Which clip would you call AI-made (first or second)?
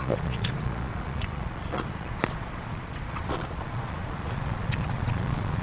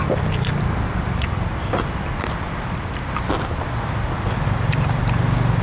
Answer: first